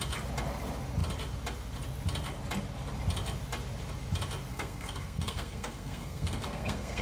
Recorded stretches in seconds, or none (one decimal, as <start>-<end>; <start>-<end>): 0.0-4.5